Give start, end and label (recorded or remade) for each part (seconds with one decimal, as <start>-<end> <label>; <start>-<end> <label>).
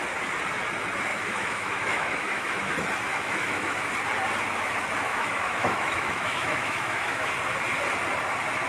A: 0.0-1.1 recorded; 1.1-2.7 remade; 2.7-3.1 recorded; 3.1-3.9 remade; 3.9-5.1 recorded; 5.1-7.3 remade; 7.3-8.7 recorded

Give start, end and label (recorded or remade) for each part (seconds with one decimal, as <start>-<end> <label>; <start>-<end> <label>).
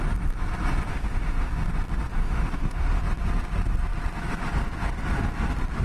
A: 0.0-0.9 recorded; 0.9-1.5 remade; 1.5-2.1 recorded; 2.1-3.0 remade; 3.0-5.8 recorded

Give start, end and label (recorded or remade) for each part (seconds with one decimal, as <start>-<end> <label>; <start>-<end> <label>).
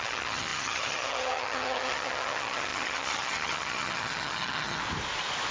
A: 0.0-4.8 remade; 4.8-5.5 recorded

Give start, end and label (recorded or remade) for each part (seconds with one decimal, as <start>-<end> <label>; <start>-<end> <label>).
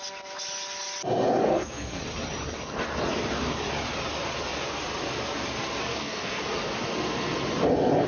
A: 0.0-1.4 recorded; 1.4-2.0 remade; 2.0-5.9 recorded; 5.9-6.4 remade; 6.4-8.1 recorded